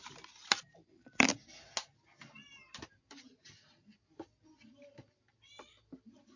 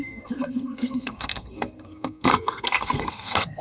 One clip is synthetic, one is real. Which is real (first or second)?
first